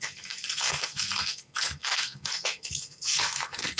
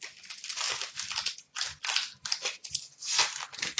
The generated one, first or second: first